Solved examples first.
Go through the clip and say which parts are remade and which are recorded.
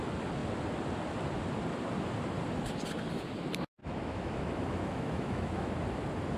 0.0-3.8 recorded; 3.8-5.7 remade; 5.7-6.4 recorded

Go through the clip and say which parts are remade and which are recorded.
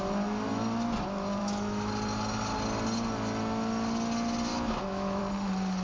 0.0-1.4 recorded; 1.4-1.9 remade; 1.9-4.5 recorded; 4.5-5.2 remade; 5.2-5.8 recorded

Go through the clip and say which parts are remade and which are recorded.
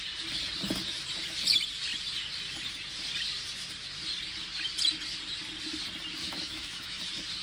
0.0-6.2 recorded; 6.2-7.0 remade; 7.0-7.4 recorded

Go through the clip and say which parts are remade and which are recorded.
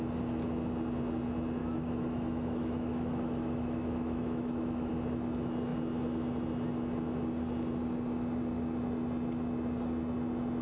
0.0-1.6 recorded; 1.6-4.9 remade; 4.9-10.6 recorded